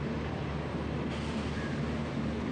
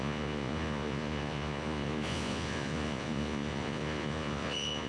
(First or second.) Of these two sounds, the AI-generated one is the second